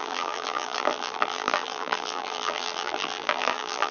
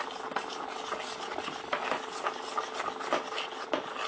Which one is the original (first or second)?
second